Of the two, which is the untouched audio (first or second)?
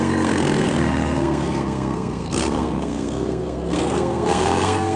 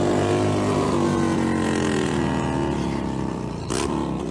second